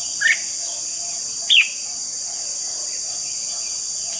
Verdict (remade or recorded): recorded